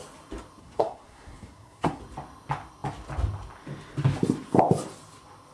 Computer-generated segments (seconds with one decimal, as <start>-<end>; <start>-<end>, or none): 0.6-2.0